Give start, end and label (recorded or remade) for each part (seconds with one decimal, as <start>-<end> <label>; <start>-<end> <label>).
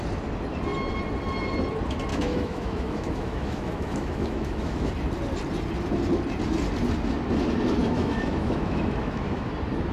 0.0-2.1 recorded; 2.1-4.9 remade; 4.9-7.8 recorded; 7.8-9.5 remade; 9.5-9.9 recorded